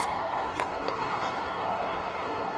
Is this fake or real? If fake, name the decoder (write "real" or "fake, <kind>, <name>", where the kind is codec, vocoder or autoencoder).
fake, codec, SNAC